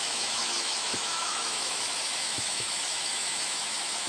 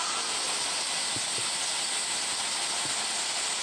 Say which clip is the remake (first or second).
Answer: first